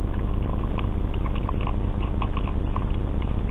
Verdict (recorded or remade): recorded